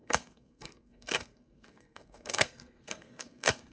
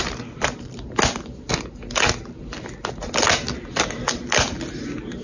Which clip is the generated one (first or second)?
first